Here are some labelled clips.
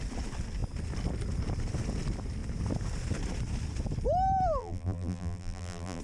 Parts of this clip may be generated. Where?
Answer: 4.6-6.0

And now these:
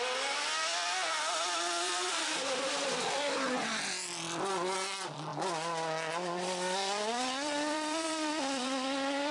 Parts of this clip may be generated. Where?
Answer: 0.0-5.3; 6.1-9.3

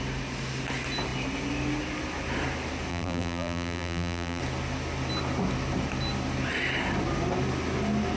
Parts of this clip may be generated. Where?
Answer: 2.9-4.4

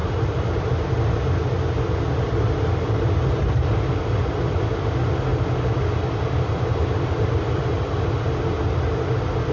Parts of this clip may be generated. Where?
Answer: 0.0-0.6; 5.3-7.6

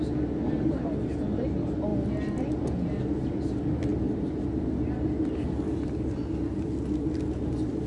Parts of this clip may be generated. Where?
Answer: none